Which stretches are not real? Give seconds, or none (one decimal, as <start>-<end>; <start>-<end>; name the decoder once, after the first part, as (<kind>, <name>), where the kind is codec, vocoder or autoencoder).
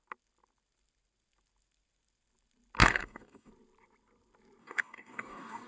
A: 2.8-3.5 (codec, DAC); 4.6-5.7